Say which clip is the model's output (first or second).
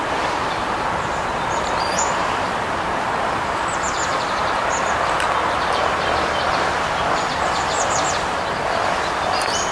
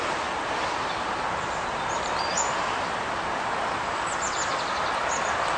first